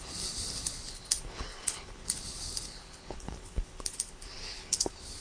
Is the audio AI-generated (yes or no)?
yes